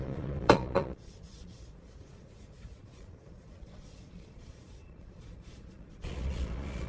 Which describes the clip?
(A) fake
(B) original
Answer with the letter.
A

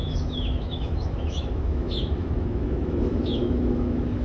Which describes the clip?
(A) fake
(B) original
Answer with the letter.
A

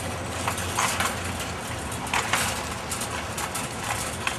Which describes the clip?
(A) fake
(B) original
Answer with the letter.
B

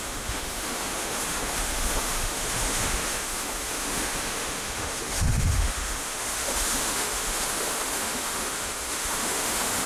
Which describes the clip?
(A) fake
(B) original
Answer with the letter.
A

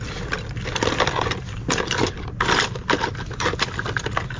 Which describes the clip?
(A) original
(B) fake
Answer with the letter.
A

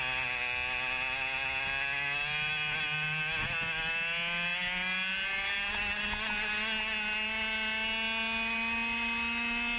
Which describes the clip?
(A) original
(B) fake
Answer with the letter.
A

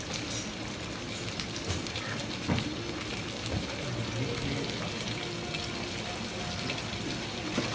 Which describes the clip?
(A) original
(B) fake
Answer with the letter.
A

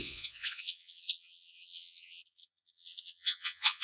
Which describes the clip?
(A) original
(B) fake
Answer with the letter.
B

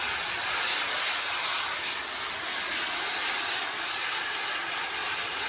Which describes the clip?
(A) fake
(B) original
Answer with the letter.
B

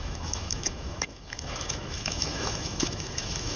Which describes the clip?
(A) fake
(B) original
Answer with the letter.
A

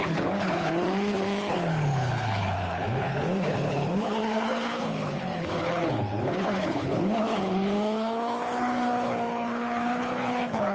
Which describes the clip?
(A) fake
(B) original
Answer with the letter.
A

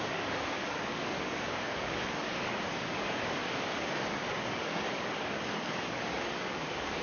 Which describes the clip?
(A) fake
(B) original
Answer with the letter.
A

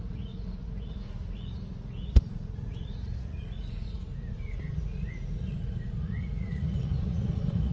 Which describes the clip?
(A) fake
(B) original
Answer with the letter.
A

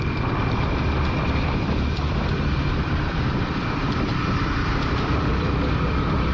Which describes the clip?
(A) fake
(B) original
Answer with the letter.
A